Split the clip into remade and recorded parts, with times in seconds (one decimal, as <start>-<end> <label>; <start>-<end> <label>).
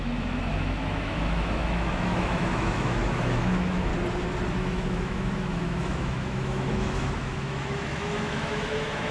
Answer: 0.0-3.9 remade; 3.9-4.5 recorded; 4.5-9.1 remade